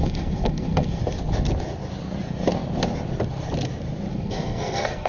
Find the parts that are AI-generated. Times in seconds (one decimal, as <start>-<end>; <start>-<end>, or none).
0.0-1.0; 4.1-5.1